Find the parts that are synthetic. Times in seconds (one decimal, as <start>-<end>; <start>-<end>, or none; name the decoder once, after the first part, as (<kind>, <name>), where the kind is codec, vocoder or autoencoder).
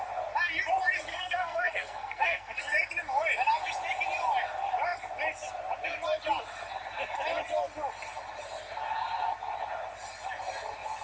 1.1-2.6 (codec, SNAC)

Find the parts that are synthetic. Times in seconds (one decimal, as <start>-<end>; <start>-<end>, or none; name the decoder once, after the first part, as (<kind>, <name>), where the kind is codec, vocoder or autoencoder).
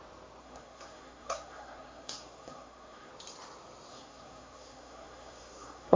0.4-3.1 (codec, SNAC); 3.9-6.0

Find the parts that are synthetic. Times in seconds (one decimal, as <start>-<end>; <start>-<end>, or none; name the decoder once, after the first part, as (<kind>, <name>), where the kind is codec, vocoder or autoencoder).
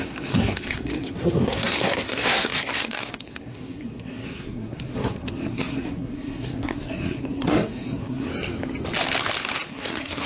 0.0-8.3 (codec, SNAC); 9.7-10.3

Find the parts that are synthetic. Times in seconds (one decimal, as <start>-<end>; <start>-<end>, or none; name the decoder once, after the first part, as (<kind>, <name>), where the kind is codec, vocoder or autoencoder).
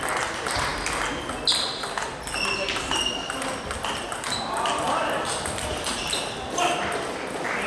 none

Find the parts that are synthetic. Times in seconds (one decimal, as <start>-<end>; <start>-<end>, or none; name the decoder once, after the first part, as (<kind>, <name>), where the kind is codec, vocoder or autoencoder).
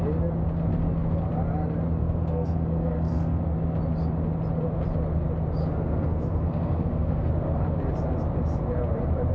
2.0-3.4 (codec, SNAC); 5.6-7.3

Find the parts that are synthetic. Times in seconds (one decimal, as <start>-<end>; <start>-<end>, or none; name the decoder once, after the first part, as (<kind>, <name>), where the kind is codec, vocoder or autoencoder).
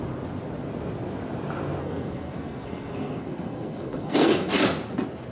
1.8-4.5 (codec, SNAC)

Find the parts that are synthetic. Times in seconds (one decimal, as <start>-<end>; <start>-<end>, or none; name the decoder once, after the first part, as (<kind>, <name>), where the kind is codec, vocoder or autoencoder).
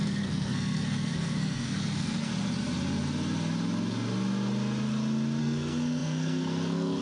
0.0-2.3 (codec, SNAC); 5.4-7.0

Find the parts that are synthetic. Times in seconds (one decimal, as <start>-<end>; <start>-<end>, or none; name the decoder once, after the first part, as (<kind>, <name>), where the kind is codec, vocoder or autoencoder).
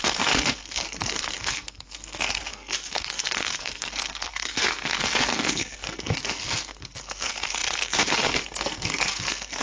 0.0-9.6 (codec, SNAC)